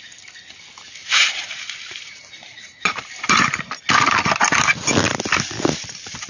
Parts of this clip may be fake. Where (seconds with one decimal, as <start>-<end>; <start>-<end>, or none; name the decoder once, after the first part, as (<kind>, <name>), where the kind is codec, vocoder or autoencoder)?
1.0-3.6 (vocoder, BigVGAN v2)